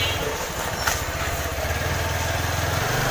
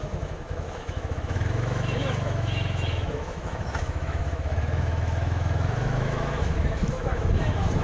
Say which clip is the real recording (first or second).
first